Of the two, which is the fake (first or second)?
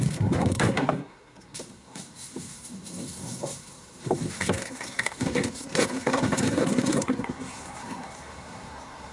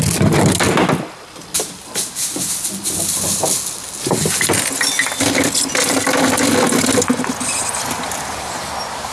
first